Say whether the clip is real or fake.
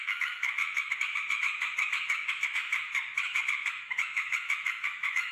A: fake